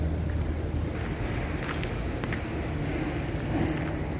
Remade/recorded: recorded